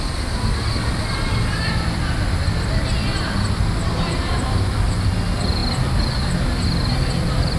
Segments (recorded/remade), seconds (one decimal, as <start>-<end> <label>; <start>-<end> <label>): 0.0-7.6 recorded